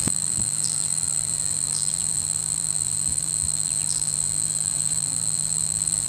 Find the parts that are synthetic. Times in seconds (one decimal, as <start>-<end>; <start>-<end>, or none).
0.0-6.1